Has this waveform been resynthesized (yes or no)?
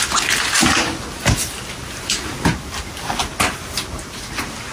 no